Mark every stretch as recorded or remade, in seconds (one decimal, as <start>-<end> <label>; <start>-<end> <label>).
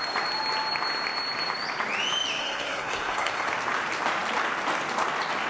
0.0-2.4 recorded; 2.4-3.5 remade; 3.5-5.5 recorded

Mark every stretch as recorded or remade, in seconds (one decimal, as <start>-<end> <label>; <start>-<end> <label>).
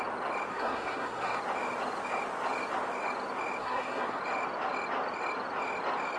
0.0-0.5 recorded; 0.5-1.4 remade; 1.4-3.6 recorded; 3.6-4.2 remade; 4.2-6.2 recorded